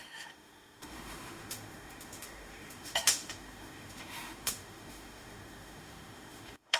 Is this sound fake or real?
fake